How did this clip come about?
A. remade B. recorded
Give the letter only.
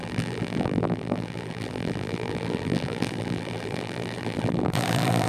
A